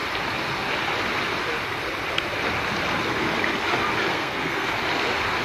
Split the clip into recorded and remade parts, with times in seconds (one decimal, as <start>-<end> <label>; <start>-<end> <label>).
0.0-4.1 recorded; 4.1-4.7 remade; 4.7-5.4 recorded